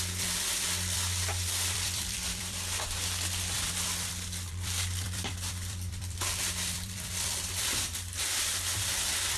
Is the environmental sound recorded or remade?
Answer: remade